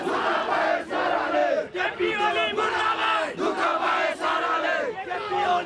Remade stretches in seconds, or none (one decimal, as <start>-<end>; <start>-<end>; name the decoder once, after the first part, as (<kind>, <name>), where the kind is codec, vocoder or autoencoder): none